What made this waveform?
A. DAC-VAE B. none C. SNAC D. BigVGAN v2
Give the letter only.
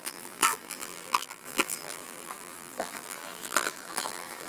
D